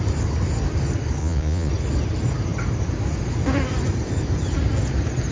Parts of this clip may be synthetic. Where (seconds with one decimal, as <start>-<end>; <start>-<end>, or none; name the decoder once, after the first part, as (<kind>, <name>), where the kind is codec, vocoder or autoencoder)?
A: 1.2-1.7 (vocoder, Vocos)